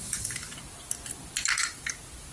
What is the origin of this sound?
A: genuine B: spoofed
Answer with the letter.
A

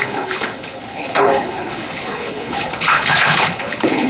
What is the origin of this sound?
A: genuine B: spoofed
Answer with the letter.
B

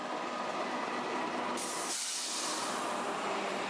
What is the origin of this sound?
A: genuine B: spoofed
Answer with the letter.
A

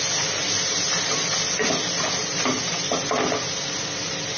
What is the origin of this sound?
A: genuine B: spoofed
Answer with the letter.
A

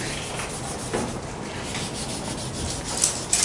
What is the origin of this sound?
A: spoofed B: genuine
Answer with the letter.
B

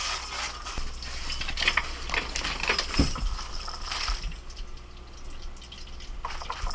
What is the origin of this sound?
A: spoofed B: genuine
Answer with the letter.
B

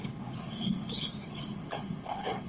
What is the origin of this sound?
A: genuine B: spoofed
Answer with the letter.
B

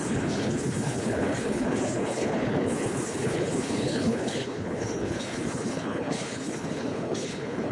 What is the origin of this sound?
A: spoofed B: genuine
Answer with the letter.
A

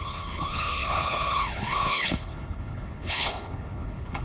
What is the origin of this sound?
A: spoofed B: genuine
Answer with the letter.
A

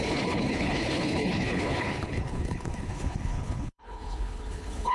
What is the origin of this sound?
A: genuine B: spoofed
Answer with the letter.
B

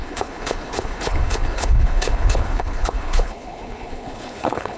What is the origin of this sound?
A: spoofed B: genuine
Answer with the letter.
A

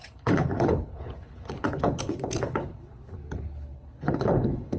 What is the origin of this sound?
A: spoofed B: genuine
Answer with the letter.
A